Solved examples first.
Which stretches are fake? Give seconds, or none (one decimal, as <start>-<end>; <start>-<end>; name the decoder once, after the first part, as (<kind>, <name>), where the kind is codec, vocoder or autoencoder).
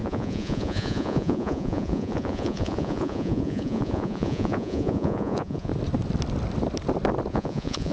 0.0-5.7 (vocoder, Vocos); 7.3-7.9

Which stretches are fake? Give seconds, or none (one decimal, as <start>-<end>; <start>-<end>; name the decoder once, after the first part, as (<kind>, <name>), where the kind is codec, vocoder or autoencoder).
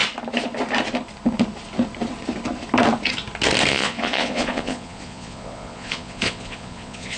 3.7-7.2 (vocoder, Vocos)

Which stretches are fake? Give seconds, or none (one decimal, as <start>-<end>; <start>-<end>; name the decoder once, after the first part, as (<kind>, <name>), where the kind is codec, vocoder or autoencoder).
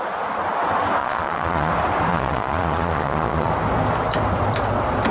1.0-1.7 (vocoder, Vocos); 2.1-3.5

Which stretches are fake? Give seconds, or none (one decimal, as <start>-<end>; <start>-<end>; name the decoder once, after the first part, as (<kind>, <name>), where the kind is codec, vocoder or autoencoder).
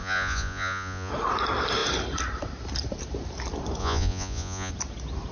0.0-1.1 (vocoder, Vocos); 3.8-4.7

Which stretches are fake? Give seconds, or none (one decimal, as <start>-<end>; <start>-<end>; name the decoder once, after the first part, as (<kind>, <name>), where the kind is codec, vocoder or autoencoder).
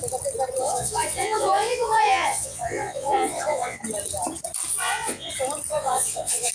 0.6-3.8 (vocoder, Vocos); 4.7-5.3; 5.7-6.5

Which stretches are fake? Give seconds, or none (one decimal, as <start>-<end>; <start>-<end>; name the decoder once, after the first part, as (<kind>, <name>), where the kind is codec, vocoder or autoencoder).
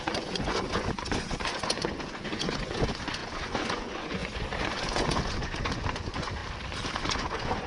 0.0-6.4 (vocoder, Vocos); 7.0-7.7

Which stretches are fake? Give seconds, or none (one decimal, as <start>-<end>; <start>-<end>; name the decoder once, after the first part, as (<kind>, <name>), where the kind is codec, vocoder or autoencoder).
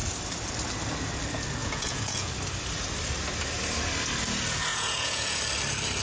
1.6-2.3 (vocoder, Vocos); 4.7-5.4